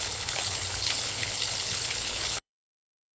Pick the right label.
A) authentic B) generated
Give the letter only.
B